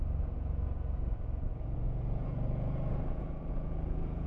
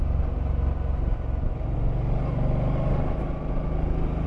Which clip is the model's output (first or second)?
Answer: first